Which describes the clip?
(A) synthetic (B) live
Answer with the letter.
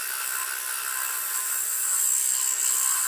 B